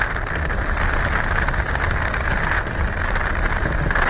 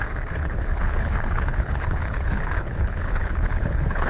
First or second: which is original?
first